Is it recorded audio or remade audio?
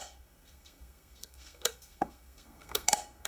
remade